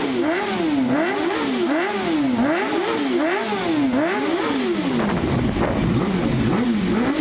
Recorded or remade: recorded